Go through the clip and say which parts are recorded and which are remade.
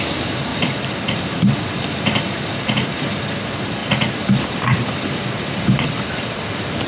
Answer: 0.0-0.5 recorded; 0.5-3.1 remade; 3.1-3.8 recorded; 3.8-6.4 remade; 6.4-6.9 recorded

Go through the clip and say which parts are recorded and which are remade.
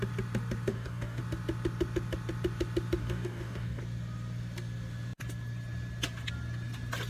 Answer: 0.0-0.7 recorded; 0.7-1.2 remade; 1.2-3.0 recorded; 3.0-3.8 remade; 3.8-7.1 recorded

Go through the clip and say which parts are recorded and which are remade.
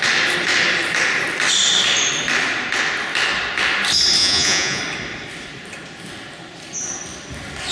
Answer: 0.0-4.2 recorded; 4.2-4.8 remade; 4.8-7.7 recorded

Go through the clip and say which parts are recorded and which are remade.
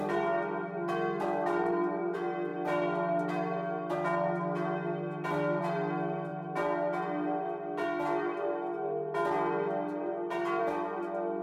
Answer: 0.0-11.4 recorded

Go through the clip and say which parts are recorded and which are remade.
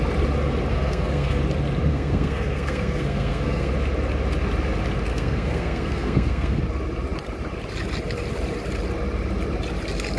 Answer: 0.0-0.7 recorded; 0.7-1.4 remade; 1.4-1.9 recorded; 1.9-3.7 remade; 3.7-5.1 recorded; 5.1-6.6 remade; 6.6-10.2 recorded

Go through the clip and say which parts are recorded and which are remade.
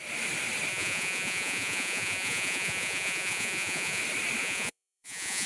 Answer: 0.0-0.7 recorded; 0.7-4.0 remade; 4.0-4.4 recorded; 4.4-5.5 remade